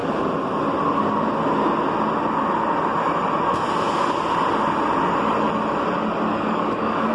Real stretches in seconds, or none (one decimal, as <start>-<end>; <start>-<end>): 0.0-6.3